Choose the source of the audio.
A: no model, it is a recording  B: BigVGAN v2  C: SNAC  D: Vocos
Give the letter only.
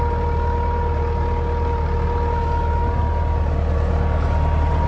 A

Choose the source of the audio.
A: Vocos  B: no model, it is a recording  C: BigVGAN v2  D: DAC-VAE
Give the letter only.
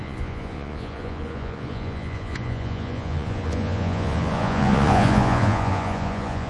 A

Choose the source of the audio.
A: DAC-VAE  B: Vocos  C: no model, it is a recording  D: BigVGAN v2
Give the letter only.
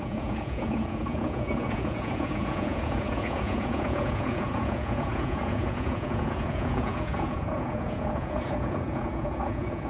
B